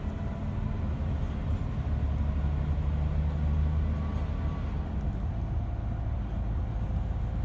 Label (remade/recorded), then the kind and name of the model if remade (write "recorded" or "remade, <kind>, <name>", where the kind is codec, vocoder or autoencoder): recorded